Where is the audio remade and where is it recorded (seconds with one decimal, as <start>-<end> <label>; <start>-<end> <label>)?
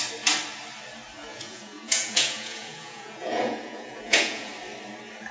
0.0-1.3 recorded; 1.3-4.5 remade; 4.5-5.3 recorded